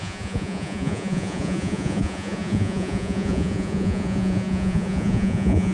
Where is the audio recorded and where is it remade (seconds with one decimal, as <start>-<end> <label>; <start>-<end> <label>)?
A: 0.0-5.7 remade